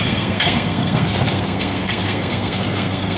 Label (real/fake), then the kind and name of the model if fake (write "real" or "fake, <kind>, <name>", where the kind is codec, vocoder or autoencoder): fake, codec, SNAC